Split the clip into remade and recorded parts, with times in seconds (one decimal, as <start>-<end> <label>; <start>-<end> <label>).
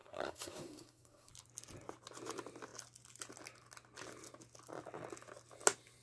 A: 0.0-1.3 remade; 1.3-6.0 recorded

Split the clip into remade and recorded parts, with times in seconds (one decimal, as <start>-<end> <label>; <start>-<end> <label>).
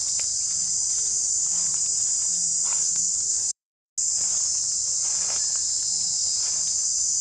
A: 0.0-2.8 recorded; 2.8-3.9 remade; 3.9-7.2 recorded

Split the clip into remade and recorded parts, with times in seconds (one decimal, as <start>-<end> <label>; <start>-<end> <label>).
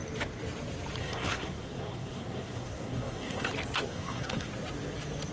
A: 0.0-1.0 recorded; 1.0-3.5 remade; 3.5-3.9 recorded; 3.9-4.5 remade; 4.5-5.3 recorded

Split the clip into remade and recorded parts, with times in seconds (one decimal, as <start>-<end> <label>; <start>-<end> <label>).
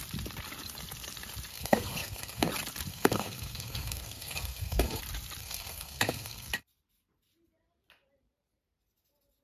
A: 0.0-1.5 recorded; 1.5-2.5 remade; 2.5-2.9 recorded; 2.9-5.0 remade; 5.0-5.4 recorded; 5.4-6.5 remade; 6.5-9.4 recorded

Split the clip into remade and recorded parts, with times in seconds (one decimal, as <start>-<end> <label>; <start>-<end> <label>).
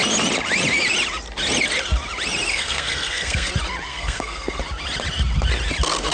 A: 0.0-2.5 recorded; 2.5-3.5 remade; 3.5-3.9 recorded; 3.9-4.6 remade; 4.6-6.1 recorded